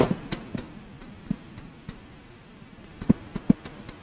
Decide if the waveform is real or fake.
real